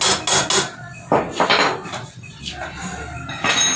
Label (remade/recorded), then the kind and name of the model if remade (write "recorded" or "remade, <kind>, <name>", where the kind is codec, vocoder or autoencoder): recorded